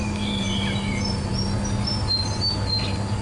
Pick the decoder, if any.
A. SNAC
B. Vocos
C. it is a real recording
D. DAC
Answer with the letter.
C